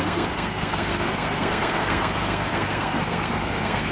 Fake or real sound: fake